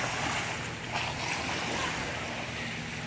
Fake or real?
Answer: real